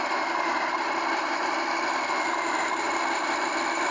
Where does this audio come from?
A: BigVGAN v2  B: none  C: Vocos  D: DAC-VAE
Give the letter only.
B